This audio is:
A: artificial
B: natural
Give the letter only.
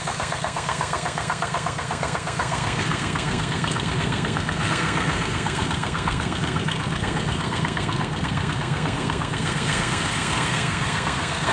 A